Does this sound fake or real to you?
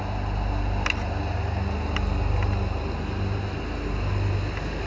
real